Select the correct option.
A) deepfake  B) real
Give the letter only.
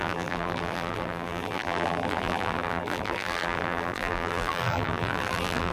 A